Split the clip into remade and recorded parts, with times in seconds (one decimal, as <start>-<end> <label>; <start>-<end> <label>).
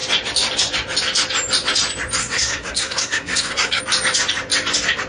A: 0.0-2.2 recorded; 2.2-3.8 remade; 3.8-5.1 recorded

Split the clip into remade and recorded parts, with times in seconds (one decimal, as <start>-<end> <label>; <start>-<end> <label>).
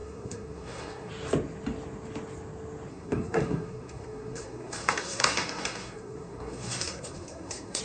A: 0.0-1.1 remade; 1.1-2.9 recorded; 2.9-7.8 remade